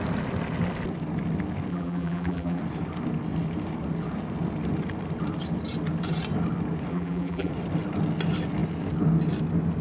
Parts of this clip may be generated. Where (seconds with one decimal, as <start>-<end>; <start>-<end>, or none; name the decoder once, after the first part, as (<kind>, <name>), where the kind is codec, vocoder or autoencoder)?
1.7-2.6 (vocoder, BigVGAN v2); 6.9-7.5